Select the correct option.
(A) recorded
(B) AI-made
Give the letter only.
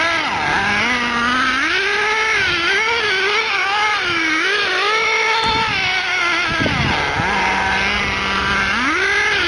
A